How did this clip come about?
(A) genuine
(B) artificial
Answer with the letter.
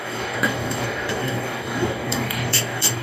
B